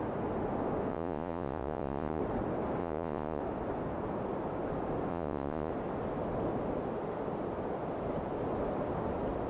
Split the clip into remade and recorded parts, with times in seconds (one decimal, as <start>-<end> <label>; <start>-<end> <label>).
0.0-0.9 recorded; 0.9-2.2 remade; 2.2-2.8 recorded; 2.8-3.4 remade; 3.4-5.1 recorded; 5.1-5.7 remade; 5.7-9.5 recorded